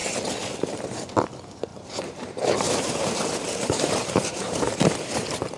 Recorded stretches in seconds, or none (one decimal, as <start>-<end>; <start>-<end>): 0.0-1.7; 5.1-5.6